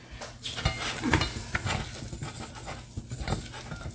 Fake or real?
real